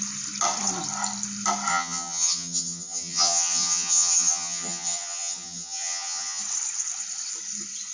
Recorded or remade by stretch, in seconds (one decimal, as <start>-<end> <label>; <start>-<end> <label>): 0.0-1.7 recorded; 1.7-6.4 remade; 6.4-7.9 recorded